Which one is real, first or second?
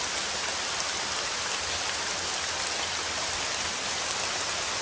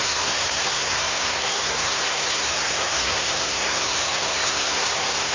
first